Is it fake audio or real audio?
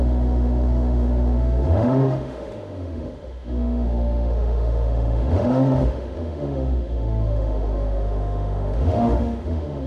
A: fake